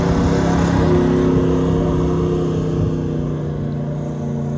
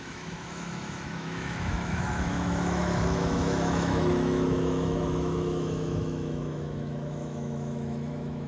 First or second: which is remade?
second